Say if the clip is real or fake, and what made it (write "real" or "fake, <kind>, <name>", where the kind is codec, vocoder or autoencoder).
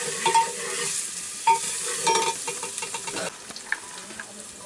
real